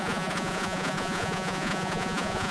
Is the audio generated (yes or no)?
yes